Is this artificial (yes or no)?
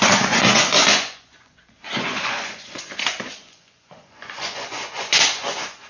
yes